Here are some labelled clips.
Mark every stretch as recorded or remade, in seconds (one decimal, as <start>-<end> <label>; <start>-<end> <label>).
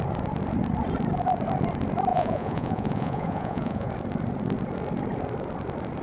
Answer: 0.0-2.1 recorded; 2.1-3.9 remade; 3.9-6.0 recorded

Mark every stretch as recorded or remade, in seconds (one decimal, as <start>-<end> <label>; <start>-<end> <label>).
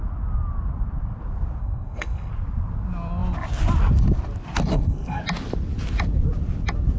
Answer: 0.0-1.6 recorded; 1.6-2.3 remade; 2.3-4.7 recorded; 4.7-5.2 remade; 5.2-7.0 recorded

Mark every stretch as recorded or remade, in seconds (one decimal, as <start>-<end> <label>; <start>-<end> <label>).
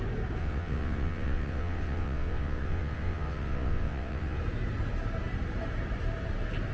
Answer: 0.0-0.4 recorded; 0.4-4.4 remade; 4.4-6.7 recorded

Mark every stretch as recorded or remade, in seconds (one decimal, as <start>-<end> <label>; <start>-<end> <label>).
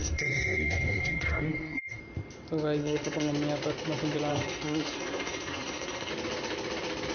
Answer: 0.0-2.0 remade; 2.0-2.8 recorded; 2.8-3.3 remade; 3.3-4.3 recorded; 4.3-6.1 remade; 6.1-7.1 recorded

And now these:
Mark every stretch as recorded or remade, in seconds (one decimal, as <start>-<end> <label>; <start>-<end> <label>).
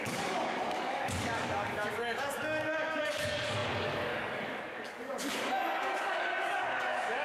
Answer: 0.0-7.2 remade